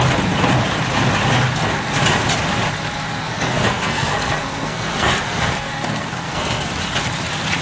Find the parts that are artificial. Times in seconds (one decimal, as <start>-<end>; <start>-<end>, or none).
3.1-6.7